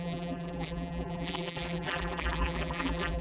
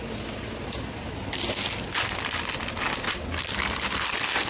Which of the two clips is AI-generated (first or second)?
first